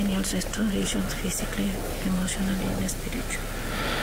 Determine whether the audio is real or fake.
real